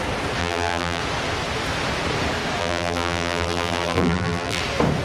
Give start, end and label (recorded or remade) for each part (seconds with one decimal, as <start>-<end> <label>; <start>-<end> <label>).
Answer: 0.0-0.4 recorded; 0.4-1.0 remade; 1.0-2.6 recorded; 2.6-4.6 remade; 4.6-5.0 recorded